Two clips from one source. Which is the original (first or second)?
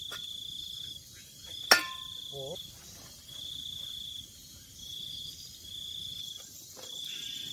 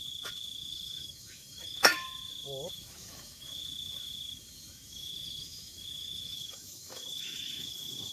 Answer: first